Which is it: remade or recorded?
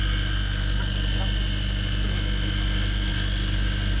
recorded